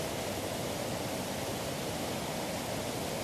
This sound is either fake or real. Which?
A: real